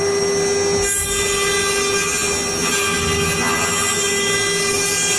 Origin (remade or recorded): recorded